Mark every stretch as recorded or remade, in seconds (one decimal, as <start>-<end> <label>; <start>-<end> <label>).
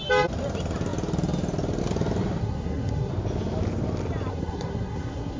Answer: 0.0-2.4 recorded; 2.4-3.1 remade; 3.1-4.3 recorded; 4.3-5.4 remade